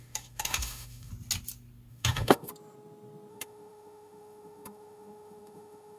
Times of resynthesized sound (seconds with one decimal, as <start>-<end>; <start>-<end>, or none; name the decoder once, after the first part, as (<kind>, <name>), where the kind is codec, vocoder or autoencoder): 0.0-1.1 (autoencoder, DAC-VAE); 1.9-2.5; 3.3-6.0